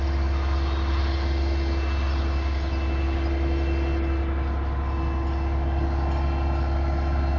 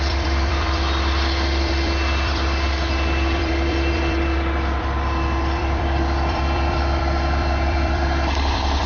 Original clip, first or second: first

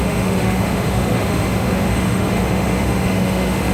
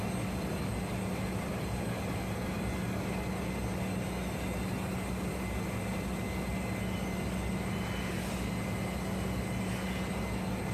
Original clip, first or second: second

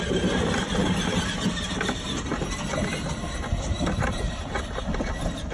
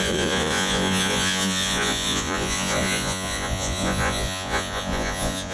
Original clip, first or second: first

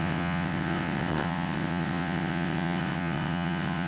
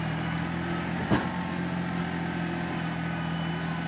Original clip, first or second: second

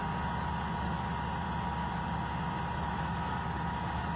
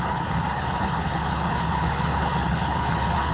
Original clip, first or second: first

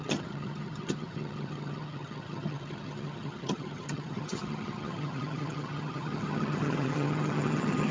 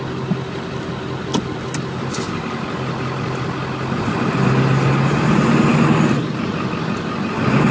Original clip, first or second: second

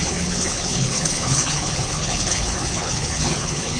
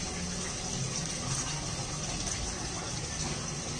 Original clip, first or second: second